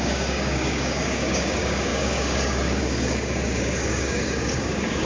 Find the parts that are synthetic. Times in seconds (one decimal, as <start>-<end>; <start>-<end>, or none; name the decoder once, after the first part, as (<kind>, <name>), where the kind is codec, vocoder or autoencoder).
0.0-5.1 (codec, DAC)